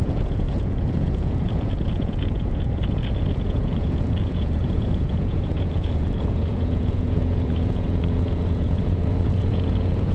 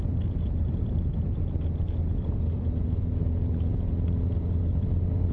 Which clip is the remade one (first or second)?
first